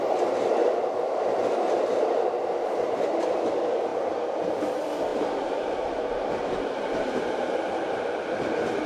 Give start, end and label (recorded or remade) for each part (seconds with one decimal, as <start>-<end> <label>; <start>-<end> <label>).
0.0-5.1 recorded; 5.1-8.2 remade; 8.2-8.9 recorded